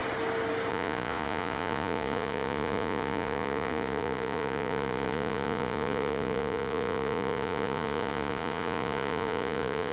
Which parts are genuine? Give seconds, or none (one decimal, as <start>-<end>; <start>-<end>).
0.0-0.7